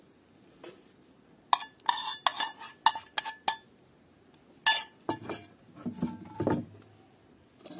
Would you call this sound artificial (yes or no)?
no